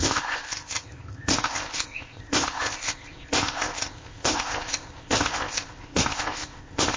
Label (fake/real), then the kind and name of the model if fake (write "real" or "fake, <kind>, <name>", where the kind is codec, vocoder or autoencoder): fake, codec, ZipCodec